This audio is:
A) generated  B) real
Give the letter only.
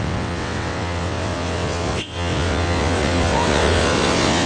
A